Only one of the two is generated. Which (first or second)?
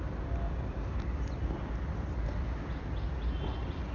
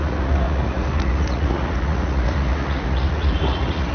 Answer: second